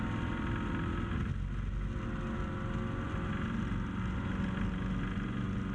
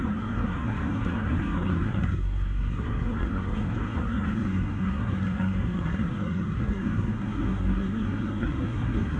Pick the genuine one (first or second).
first